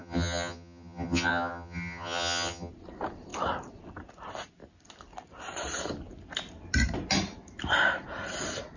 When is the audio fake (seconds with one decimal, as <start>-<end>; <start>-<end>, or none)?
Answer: 0.0-2.7